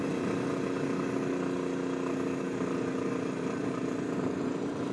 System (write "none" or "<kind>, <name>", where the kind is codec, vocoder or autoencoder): none